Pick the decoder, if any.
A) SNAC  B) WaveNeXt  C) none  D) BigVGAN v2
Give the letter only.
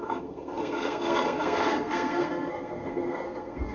A